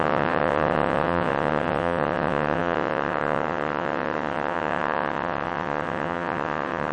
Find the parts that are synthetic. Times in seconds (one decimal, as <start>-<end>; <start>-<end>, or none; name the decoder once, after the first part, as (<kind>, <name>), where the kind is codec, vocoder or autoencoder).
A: 0.0-6.9 (vocoder, WaveNeXt)